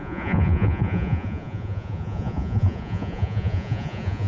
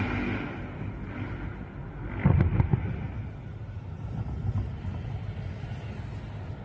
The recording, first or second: second